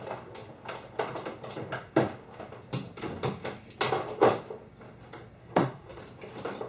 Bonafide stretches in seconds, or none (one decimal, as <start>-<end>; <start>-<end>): 0.0-5.4; 6.0-6.7